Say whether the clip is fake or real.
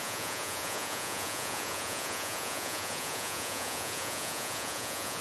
fake